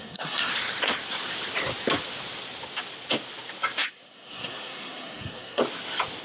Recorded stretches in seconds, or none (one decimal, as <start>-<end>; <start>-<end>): 0.5-3.9; 5.6-6.2